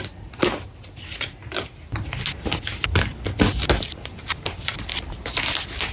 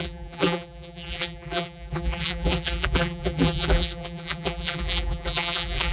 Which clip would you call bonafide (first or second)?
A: first